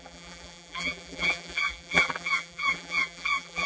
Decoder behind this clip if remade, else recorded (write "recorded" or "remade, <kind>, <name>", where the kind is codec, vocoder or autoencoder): remade, vocoder, BigVGAN v2